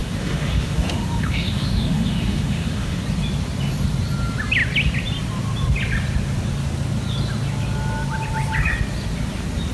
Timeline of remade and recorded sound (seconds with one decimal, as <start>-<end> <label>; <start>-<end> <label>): 0.0-3.0 remade; 3.0-9.7 recorded